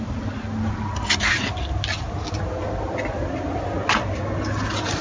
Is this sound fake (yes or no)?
no